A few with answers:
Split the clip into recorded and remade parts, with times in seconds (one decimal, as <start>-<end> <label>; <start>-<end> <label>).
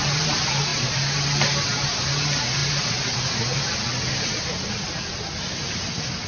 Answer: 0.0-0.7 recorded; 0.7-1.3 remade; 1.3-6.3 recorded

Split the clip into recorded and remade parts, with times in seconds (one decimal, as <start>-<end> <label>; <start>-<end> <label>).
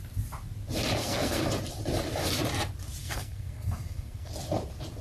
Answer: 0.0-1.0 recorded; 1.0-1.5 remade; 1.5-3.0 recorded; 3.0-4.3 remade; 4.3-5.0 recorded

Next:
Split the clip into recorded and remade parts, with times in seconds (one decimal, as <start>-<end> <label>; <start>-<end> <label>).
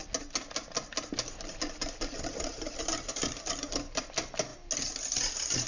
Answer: 0.0-2.5 recorded; 2.5-3.5 remade; 3.5-5.7 recorded